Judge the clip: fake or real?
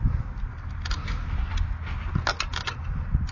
real